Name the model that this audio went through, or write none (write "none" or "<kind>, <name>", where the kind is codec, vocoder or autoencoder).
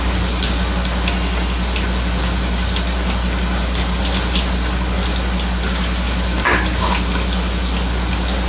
none